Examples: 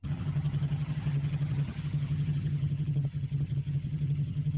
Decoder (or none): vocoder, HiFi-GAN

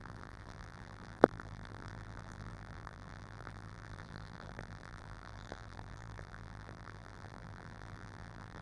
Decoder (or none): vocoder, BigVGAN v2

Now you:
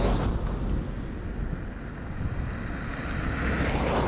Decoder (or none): none